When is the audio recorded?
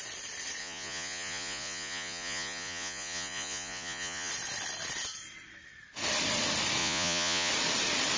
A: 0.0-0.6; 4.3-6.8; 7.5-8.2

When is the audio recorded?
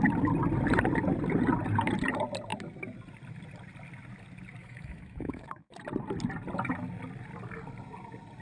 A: 0.0-4.6; 5.8-8.4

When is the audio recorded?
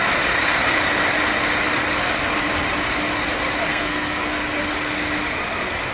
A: 0.0-3.7; 4.4-5.9